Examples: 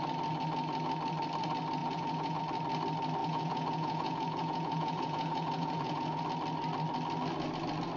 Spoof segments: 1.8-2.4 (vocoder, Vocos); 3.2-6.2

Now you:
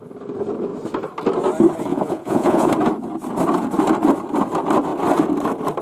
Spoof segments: 1.9-2.7 (vocoder, Vocos)